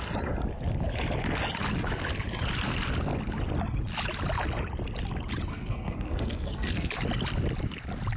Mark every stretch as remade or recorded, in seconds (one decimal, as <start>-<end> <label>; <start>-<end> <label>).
0.0-5.5 recorded; 5.5-6.9 remade; 6.9-8.2 recorded